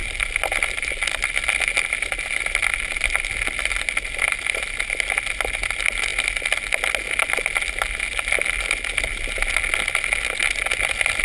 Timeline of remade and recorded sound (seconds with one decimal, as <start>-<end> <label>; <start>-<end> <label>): 0.0-11.2 recorded